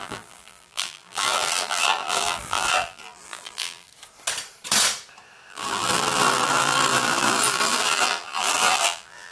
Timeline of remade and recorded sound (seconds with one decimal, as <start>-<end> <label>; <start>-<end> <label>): 0.0-3.9 remade; 3.9-5.5 recorded; 5.5-9.3 remade